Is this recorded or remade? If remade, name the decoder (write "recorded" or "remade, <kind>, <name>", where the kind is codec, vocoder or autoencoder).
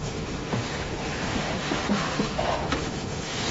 remade, autoencoder, DAC-VAE